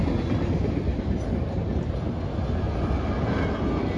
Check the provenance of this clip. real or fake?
real